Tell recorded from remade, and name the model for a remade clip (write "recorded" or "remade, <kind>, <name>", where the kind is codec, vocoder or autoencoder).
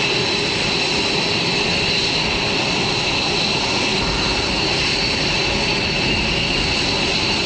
recorded